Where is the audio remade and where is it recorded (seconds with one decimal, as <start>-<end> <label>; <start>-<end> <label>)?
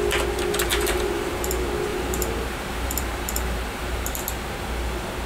0.0-0.7 recorded; 0.7-1.5 remade; 1.5-1.9 recorded; 1.9-4.2 remade; 4.2-5.3 recorded